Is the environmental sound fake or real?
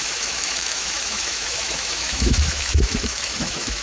fake